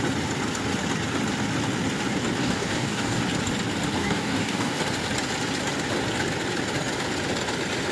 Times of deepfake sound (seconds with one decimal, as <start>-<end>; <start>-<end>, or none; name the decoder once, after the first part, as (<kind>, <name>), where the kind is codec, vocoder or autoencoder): 2.4-3.2 (codec, DAC); 4.0-4.8